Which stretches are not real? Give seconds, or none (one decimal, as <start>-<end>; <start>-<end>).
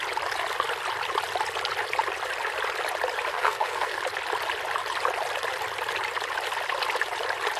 3.3-4.0